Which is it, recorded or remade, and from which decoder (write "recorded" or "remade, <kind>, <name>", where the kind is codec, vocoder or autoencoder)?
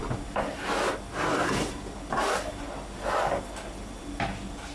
recorded